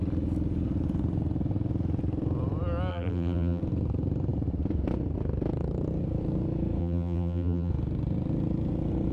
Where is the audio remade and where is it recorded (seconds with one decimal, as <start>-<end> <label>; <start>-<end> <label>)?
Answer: 0.0-2.9 recorded; 2.9-3.6 remade; 3.6-6.8 recorded; 6.8-7.7 remade; 7.7-9.1 recorded